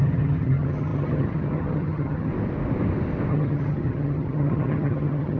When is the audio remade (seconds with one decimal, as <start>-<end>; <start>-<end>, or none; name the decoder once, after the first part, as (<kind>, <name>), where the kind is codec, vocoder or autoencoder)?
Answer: 0.0-2.3 (vocoder, HiFi-GAN); 3.3-5.4